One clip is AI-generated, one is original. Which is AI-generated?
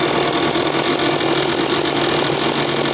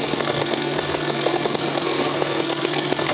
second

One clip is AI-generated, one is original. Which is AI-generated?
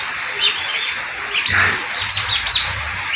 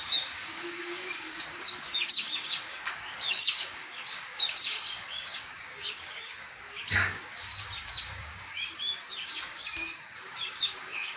second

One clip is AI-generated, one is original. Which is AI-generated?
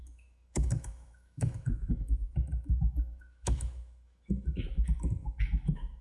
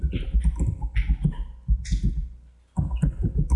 first